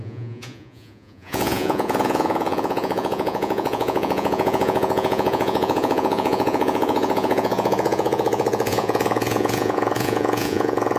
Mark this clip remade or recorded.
remade